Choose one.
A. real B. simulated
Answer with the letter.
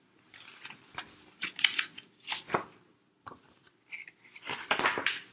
A